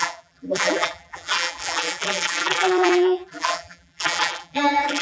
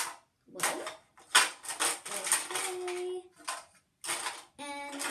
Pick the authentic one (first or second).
second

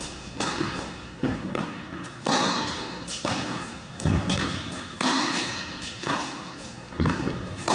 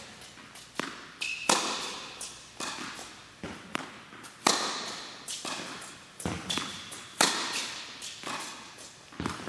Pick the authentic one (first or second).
second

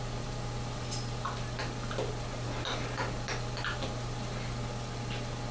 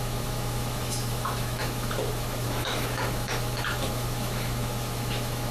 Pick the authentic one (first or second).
first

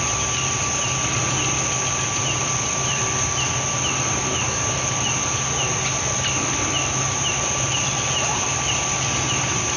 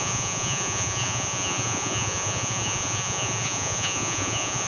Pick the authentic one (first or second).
first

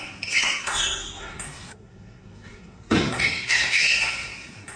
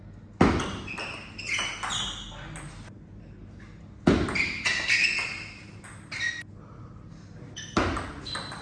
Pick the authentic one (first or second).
second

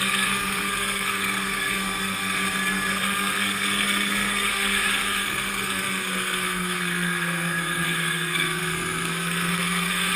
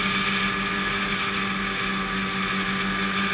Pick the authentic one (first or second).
second